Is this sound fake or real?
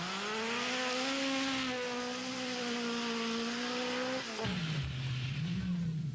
real